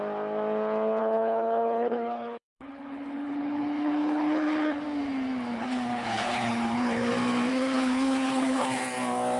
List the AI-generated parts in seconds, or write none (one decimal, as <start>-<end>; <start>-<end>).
1.0-4.8; 5.5-7.1; 7.5-8.8